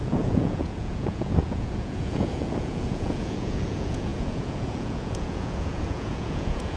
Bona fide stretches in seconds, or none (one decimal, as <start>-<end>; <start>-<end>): none